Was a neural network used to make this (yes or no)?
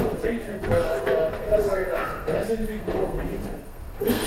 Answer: yes